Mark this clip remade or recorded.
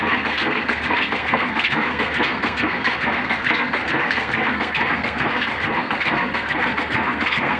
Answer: remade